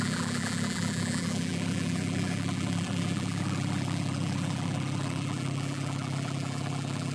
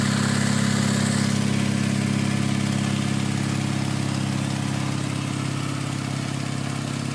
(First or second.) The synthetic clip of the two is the first